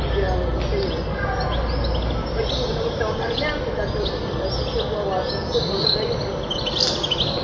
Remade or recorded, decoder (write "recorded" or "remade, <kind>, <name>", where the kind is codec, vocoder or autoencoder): recorded